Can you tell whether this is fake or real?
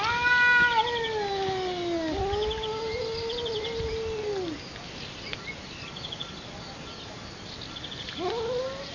real